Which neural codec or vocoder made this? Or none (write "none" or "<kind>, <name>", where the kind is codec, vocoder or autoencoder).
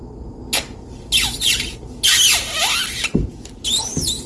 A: none